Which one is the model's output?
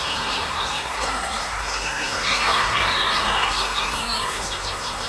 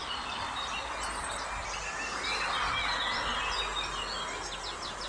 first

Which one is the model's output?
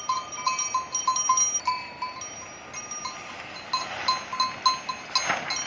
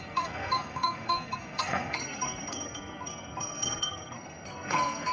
second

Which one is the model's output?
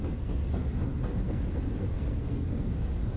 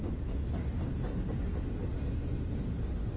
first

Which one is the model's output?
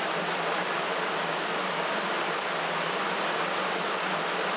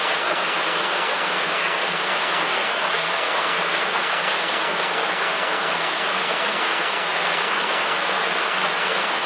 second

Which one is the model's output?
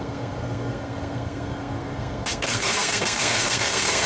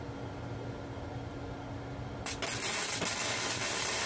first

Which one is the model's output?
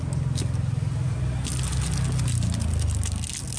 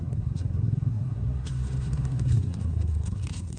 second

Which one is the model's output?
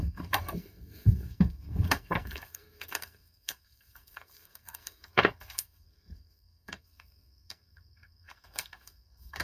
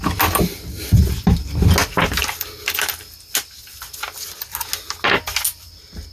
first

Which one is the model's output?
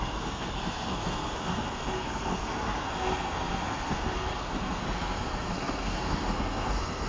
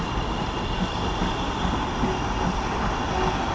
first